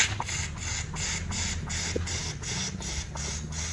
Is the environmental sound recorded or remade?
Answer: recorded